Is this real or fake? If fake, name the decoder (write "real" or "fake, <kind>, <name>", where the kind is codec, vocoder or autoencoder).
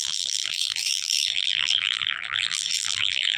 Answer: fake, vocoder, BigVGAN v2